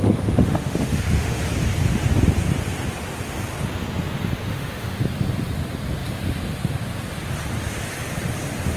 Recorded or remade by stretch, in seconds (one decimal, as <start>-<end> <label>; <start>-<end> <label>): 0.0-1.4 remade; 1.4-4.5 recorded; 4.5-5.0 remade; 5.0-8.8 recorded